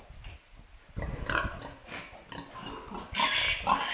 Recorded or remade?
recorded